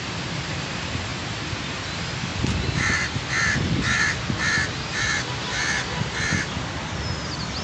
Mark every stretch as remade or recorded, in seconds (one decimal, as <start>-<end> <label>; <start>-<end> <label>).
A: 0.0-7.6 recorded